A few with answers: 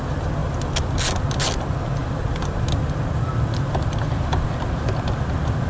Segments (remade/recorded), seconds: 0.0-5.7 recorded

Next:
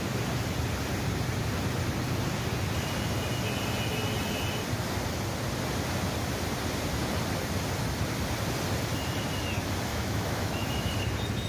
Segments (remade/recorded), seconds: 0.0-9.9 recorded; 9.9-10.9 remade; 10.9-11.5 recorded

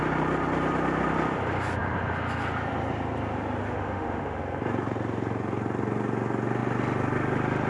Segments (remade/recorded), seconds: 0.0-3.6 recorded; 3.6-4.4 remade; 4.4-7.7 recorded